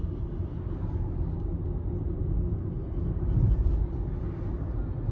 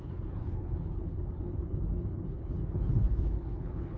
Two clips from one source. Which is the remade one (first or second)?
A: second